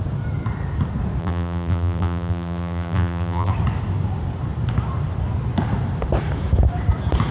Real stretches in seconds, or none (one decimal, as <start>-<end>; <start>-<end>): 0.0-1.2; 3.5-7.3